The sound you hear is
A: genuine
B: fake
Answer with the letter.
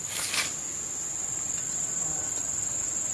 A